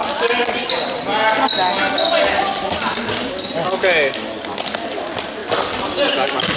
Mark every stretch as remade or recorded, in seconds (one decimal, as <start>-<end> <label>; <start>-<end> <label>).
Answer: 0.0-6.6 recorded

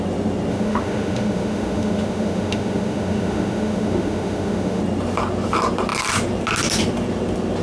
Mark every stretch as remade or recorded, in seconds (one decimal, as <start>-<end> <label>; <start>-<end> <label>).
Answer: 0.0-0.5 recorded; 0.5-4.8 remade; 4.8-7.6 recorded

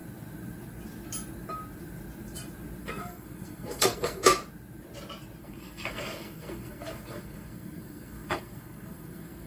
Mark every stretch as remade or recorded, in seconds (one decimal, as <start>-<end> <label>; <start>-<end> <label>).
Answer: 0.0-2.8 recorded; 2.8-4.4 remade; 4.4-5.4 recorded; 5.4-9.5 remade

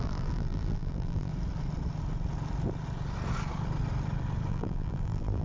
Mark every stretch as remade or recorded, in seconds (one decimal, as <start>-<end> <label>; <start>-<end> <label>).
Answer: 0.0-1.3 remade; 1.3-4.5 recorded; 4.5-5.4 remade

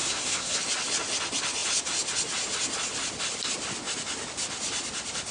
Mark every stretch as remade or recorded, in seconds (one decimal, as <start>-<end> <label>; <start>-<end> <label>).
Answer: 0.0-0.6 remade; 0.6-5.3 recorded

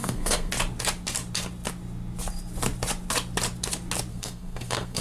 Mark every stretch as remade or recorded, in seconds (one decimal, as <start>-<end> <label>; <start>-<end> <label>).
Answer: 0.0-0.5 remade; 0.5-4.1 recorded; 4.1-5.0 remade

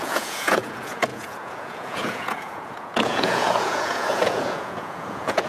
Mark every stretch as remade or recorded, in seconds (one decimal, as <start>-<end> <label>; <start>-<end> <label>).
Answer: 0.0-5.5 remade